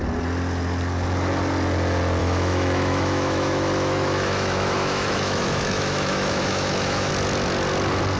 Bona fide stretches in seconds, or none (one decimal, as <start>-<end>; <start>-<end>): 0.0-2.2; 7.1-8.2

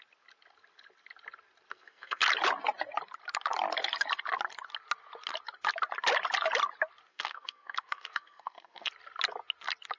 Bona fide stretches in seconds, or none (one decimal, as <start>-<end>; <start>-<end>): 0.0-1.7; 2.2-7.1; 8.9-10.0

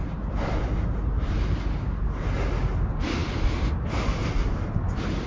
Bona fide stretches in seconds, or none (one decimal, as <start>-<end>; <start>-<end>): 0.0-5.3

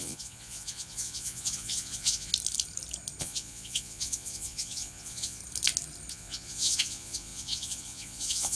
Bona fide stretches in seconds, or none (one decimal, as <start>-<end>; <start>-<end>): 2.3-3.2; 5.4-6.1